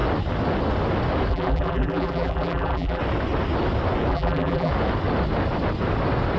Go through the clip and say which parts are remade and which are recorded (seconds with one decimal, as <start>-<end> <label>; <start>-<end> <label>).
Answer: 0.0-1.3 recorded; 1.3-3.0 remade; 3.0-4.1 recorded; 4.1-4.7 remade; 4.7-6.4 recorded

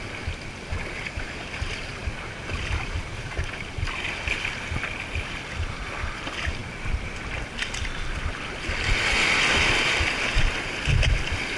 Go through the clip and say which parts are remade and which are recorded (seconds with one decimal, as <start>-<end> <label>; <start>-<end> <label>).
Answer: 0.0-11.6 recorded